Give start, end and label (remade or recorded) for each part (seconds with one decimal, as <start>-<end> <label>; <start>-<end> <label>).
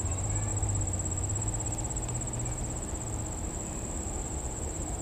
0.0-0.5 remade; 0.5-3.5 recorded; 3.5-5.0 remade